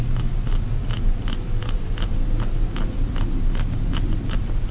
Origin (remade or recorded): recorded